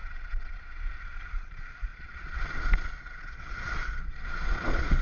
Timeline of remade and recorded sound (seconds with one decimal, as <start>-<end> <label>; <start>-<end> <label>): 0.0-1.5 remade; 1.5-1.9 recorded; 1.9-5.0 remade